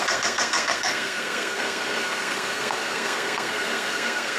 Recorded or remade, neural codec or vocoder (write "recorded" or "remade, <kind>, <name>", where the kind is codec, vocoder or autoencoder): remade, codec, SNAC